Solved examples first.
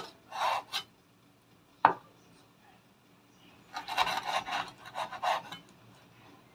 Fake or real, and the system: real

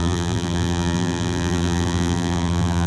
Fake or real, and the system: fake, vocoder, BigVGAN v2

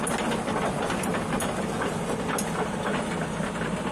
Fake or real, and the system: real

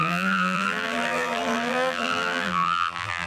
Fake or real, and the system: fake, vocoder, BigVGAN v2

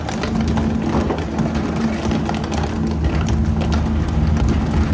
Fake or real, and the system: real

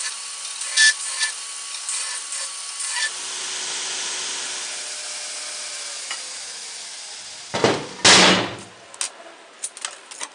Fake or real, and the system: real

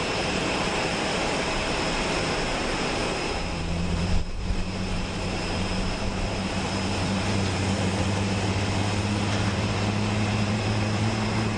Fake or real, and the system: fake, vocoder, BigVGAN v2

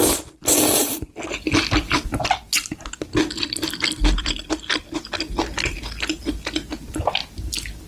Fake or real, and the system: real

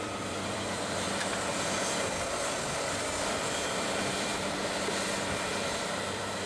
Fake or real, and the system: fake, vocoder, BigVGAN v2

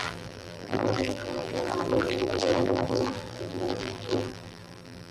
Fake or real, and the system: fake, vocoder, BigVGAN v2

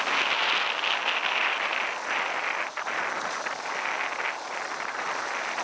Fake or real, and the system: real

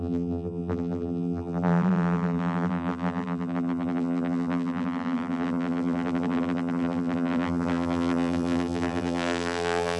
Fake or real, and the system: fake, vocoder, BigVGAN v2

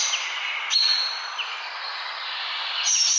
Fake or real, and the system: real